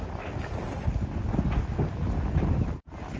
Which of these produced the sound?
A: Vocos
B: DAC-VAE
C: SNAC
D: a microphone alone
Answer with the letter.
D